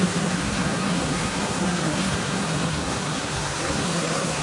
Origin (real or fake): fake